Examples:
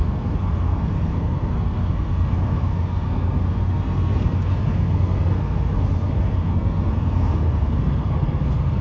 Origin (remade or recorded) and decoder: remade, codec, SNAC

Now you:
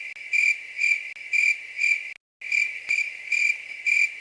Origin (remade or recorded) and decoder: recorded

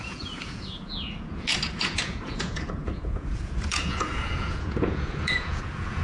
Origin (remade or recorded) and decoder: remade, vocoder, Vocos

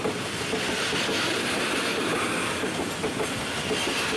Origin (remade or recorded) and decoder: recorded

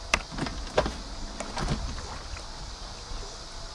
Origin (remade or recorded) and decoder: recorded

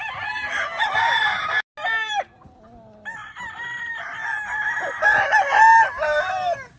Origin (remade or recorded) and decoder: recorded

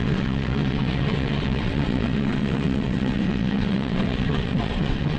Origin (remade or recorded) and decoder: remade, vocoder, WaveNeXt